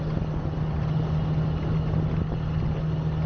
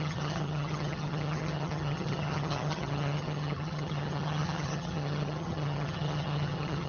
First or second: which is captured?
first